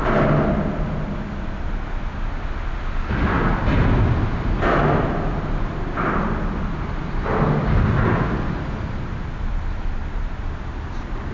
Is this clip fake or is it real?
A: real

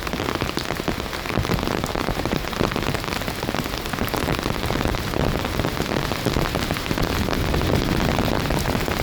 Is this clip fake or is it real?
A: fake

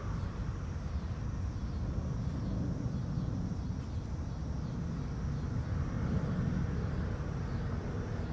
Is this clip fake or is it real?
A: real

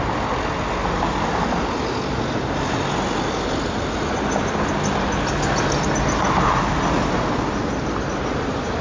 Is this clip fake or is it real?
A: real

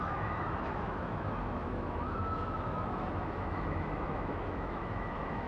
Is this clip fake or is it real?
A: fake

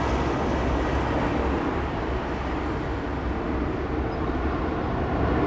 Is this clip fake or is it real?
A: real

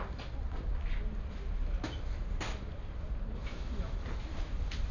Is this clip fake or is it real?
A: real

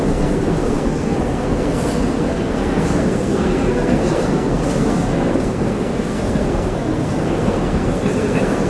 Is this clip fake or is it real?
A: fake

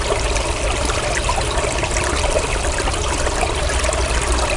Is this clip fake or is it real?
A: real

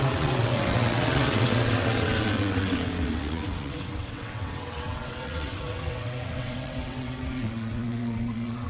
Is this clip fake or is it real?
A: fake